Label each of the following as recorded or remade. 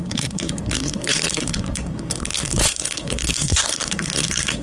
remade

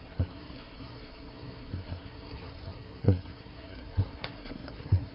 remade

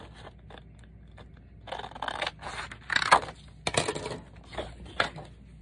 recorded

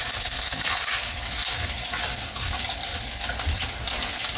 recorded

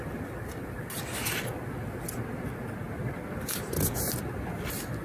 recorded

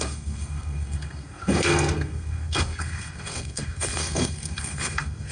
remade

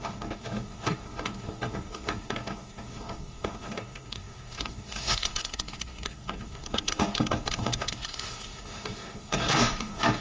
remade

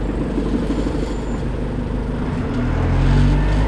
recorded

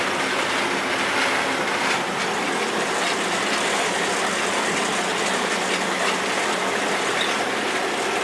recorded